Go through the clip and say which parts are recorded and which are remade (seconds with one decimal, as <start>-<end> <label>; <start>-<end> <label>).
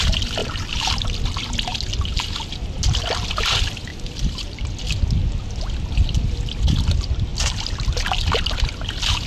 0.0-0.4 recorded; 0.4-1.0 remade; 1.0-3.9 recorded; 3.9-4.6 remade; 4.6-9.3 recorded